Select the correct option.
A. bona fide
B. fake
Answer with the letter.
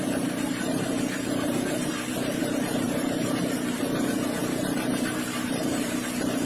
B